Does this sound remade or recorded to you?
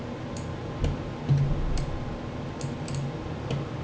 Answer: recorded